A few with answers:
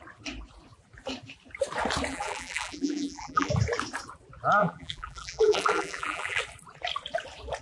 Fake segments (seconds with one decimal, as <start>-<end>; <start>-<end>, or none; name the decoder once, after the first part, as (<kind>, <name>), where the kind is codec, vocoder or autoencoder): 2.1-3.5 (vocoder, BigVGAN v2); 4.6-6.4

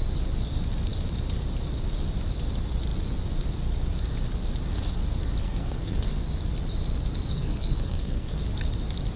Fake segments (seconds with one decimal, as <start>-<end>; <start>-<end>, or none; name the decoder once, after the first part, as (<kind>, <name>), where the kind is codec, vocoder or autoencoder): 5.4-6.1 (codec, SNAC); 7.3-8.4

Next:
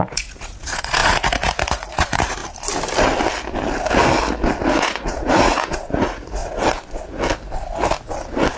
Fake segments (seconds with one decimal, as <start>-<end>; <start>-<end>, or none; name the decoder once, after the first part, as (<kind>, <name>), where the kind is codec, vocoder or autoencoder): 0.0-2.4 (vocoder, Vocos); 4.7-6.4

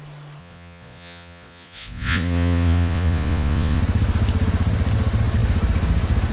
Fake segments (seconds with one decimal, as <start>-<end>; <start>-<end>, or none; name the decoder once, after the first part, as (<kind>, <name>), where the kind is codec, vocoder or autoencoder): 0.4-3.8 (vocoder, Vocos)